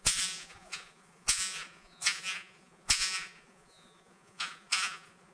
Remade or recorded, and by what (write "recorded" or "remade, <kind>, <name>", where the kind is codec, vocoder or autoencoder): remade, vocoder, Vocos